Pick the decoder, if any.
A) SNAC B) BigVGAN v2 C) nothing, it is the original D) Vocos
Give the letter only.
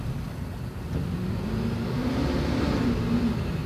C